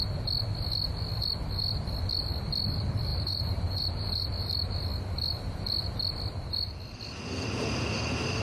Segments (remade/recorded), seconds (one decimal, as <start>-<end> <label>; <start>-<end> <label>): 0.0-3.1 recorded; 3.1-4.3 remade; 4.3-8.4 recorded